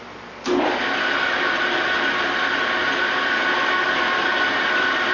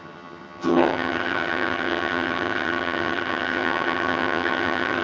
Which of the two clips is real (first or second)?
first